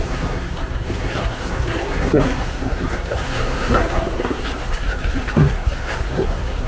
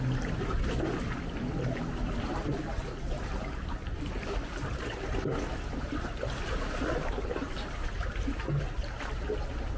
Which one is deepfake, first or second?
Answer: first